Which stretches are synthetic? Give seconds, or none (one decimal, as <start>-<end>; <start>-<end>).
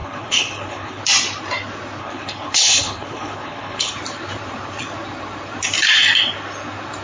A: 0.0-1.0; 2.0-3.9